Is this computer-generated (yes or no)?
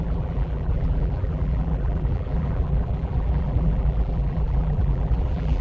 yes